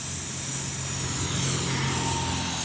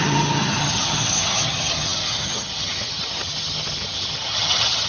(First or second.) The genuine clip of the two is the first